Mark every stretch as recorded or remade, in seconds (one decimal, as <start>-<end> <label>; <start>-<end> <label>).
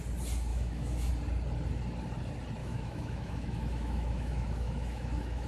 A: 0.0-0.5 recorded; 0.5-1.1 remade; 1.1-2.6 recorded; 2.6-5.5 remade